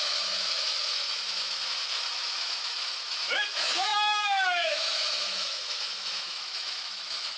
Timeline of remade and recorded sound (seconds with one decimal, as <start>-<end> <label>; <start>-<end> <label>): 0.0-7.4 remade